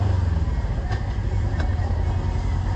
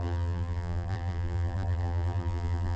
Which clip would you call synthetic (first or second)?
second